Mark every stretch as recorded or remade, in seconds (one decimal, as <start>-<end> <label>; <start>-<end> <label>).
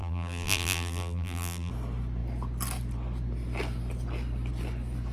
0.0-1.7 remade; 1.7-5.1 recorded